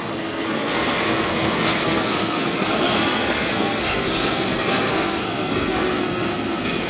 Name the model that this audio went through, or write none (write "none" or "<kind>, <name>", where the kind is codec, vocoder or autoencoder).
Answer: codec, SNAC